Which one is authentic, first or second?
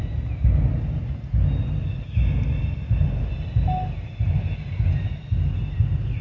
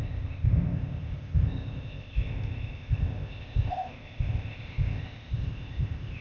first